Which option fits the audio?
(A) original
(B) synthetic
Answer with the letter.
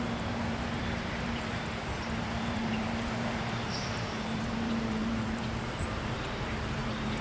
B